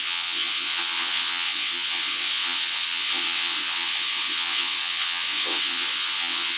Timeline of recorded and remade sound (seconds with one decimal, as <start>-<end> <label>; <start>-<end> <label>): 0.0-6.6 remade